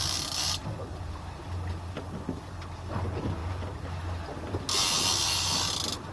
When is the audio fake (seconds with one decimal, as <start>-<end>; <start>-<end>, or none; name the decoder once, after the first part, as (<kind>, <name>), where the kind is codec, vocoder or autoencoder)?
none